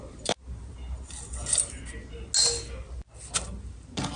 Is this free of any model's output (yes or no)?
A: yes